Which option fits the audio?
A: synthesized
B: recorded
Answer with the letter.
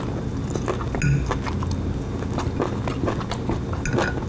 B